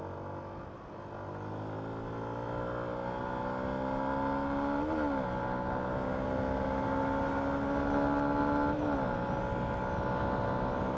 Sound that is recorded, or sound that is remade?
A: recorded